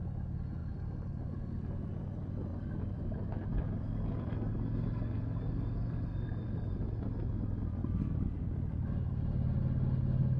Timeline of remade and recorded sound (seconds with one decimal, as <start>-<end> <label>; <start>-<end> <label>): 0.0-0.6 recorded; 0.6-1.9 remade; 1.9-2.5 recorded; 2.5-4.5 remade; 4.5-7.8 recorded; 7.8-9.6 remade; 9.6-10.4 recorded